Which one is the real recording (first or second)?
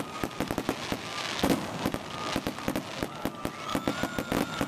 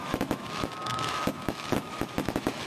first